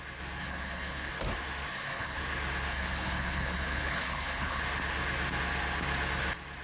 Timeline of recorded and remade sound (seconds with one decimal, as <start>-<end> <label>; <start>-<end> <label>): 0.0-0.4 recorded; 0.4-1.1 remade; 1.1-1.7 recorded; 1.7-2.2 remade; 2.2-2.7 recorded; 2.7-4.6 remade; 4.6-6.6 recorded